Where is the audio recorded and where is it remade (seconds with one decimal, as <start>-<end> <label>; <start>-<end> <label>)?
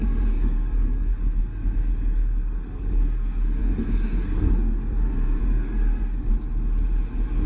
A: 0.0-6.3 remade; 6.3-7.5 recorded